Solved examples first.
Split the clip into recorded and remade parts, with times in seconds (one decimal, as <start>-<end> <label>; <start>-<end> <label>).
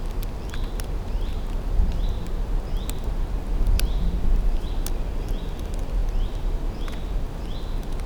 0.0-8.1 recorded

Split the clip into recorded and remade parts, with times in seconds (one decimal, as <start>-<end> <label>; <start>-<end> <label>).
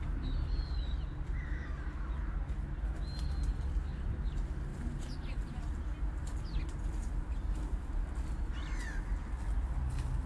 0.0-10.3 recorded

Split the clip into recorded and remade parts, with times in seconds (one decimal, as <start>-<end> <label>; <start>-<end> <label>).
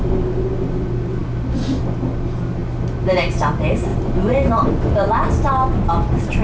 0.0-6.4 recorded